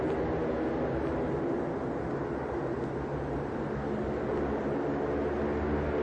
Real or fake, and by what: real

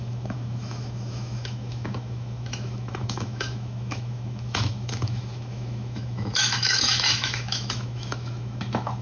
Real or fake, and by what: fake, autoencoder, DAC-VAE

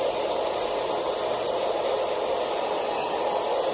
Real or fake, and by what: real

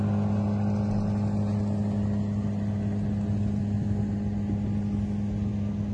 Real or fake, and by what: real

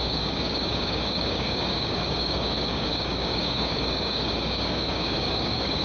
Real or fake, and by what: fake, codec, DAC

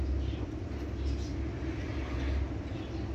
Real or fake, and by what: real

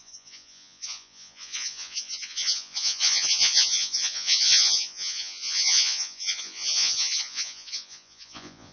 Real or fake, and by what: fake, vocoder, Vocos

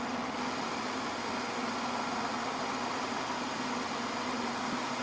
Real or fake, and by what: real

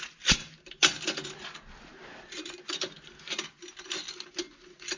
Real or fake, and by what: real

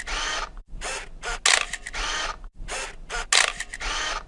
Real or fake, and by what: real